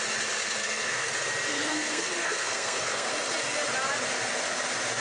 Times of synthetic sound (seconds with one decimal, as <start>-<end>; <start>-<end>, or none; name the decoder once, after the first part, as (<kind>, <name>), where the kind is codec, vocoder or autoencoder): 0.6-1.1 (codec, SNAC); 1.5-3.1